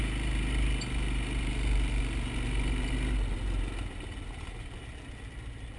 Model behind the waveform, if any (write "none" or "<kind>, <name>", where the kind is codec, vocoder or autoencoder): none